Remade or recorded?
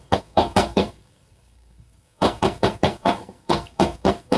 remade